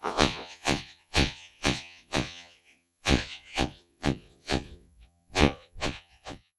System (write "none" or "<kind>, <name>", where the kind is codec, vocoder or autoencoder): vocoder, Vocos